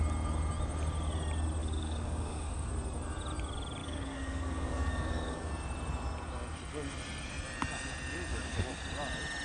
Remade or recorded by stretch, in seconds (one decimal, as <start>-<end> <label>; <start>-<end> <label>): 0.0-1.6 recorded; 1.6-2.7 remade; 2.7-3.8 recorded; 3.8-5.5 remade; 5.5-8.3 recorded; 8.3-8.8 remade; 8.8-9.4 recorded